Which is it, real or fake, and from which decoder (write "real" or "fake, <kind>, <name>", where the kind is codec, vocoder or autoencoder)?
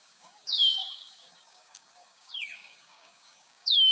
fake, codec, DAC